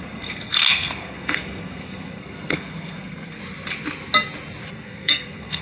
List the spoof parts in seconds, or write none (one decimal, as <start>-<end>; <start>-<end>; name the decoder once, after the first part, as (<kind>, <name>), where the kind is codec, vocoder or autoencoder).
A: 0.0-3.4 (codec, SNAC); 4.7-5.6